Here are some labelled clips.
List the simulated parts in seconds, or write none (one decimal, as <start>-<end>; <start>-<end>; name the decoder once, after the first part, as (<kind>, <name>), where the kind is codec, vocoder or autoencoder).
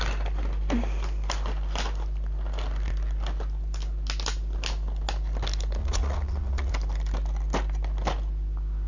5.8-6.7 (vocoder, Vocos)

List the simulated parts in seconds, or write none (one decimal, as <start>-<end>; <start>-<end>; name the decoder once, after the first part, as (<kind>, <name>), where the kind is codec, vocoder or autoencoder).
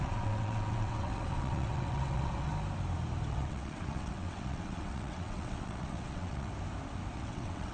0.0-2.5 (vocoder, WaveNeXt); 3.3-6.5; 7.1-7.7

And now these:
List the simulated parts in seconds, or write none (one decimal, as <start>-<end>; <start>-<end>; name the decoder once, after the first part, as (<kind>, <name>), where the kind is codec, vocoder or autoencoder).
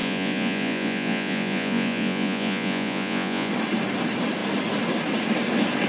0.0-3.5 (vocoder, Vocos)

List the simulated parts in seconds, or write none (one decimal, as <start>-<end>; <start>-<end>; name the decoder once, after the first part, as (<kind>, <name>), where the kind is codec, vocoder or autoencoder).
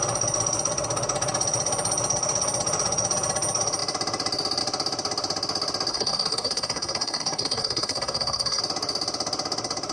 5.9-8.6 (codec, SNAC)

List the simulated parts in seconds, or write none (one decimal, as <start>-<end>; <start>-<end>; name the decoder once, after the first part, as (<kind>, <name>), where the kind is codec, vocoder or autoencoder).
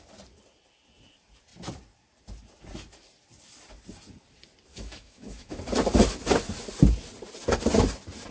4.7-5.6 (autoencoder, DAC-VAE)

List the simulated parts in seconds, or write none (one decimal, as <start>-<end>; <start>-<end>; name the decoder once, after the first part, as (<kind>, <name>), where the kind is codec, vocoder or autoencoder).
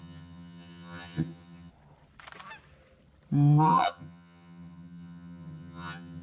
0.0-1.7 (vocoder, HiFi-GAN); 3.7-6.2